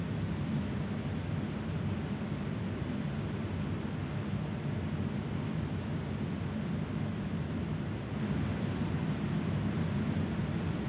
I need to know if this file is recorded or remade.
recorded